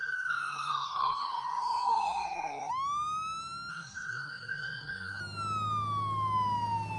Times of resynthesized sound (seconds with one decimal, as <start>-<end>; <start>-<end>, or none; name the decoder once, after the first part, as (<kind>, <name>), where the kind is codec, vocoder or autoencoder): 0.0-2.7 (codec, SNAC); 3.7-5.2